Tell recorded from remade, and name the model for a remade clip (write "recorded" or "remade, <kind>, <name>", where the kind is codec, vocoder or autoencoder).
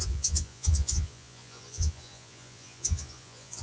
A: remade, vocoder, Vocos